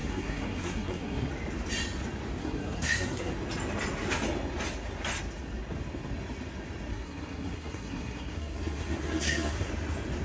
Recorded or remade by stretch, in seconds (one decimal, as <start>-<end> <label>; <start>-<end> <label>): 0.0-1.3 remade; 1.3-2.4 recorded; 2.4-3.3 remade; 3.3-6.9 recorded; 6.9-9.7 remade; 9.7-10.2 recorded